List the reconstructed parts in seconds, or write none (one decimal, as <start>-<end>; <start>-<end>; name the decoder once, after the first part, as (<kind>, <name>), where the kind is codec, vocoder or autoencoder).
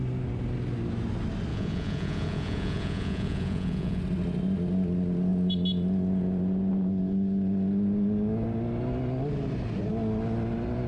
1.5-4.0 (vocoder, Vocos)